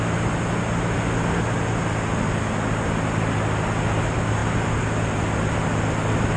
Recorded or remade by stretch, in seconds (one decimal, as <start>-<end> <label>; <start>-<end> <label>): 0.0-6.4 recorded